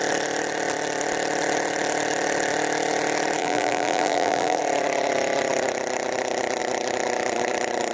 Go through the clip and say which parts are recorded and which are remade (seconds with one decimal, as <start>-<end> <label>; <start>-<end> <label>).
0.0-3.4 recorded; 3.4-4.6 remade; 4.6-7.9 recorded